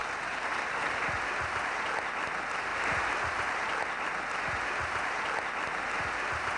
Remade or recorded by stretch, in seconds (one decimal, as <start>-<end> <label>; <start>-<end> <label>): 0.0-6.6 recorded